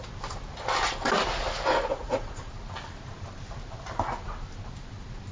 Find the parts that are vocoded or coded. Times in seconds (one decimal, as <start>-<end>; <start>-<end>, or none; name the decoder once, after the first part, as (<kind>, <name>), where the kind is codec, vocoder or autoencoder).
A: 1.9-2.5 (vocoder, Vocos)